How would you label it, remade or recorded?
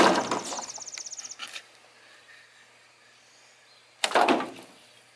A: recorded